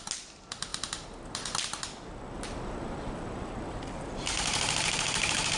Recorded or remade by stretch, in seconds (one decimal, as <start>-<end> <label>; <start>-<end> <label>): 0.0-5.6 recorded